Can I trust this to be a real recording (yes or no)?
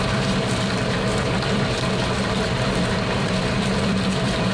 no